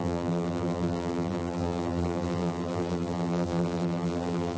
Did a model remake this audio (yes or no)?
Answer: yes